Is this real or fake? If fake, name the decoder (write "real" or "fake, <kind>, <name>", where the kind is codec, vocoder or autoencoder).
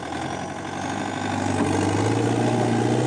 real